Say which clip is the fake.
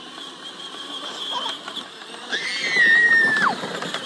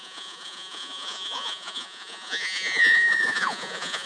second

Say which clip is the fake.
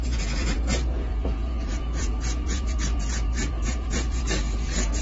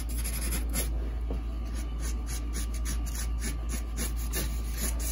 first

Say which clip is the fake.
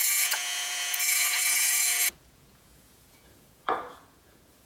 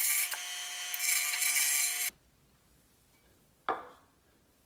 first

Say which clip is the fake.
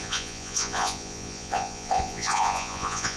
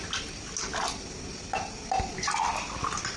first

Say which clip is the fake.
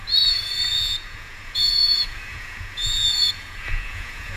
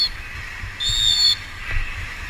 first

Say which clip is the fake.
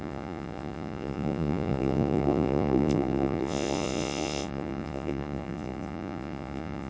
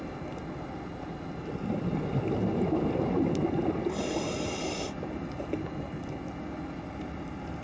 first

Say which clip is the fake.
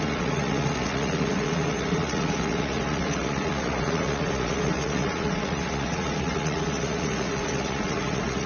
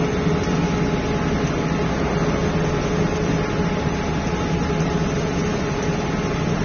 first